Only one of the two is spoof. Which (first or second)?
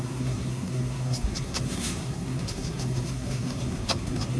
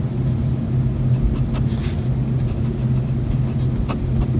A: first